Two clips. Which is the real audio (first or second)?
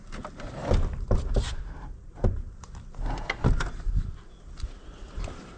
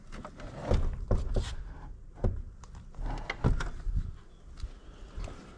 second